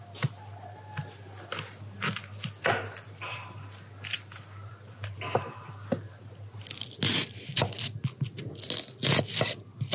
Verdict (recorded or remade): recorded